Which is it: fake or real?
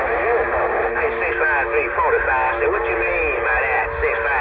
real